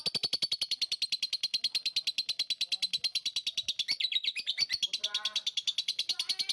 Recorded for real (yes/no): yes